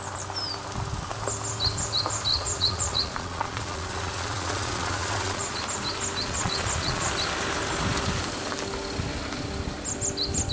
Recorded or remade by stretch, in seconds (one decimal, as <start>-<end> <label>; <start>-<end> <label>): 0.0-2.3 recorded; 2.3-5.6 remade; 5.6-6.2 recorded; 6.2-7.1 remade; 7.1-10.5 recorded